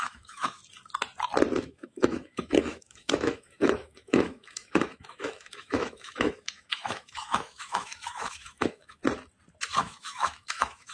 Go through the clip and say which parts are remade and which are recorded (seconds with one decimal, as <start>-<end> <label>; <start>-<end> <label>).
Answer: 0.0-0.6 remade; 0.6-1.6 recorded; 1.6-9.0 remade; 9.0-9.8 recorded; 9.8-10.9 remade